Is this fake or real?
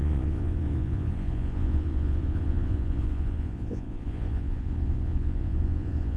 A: fake